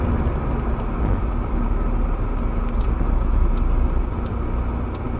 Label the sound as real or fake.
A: real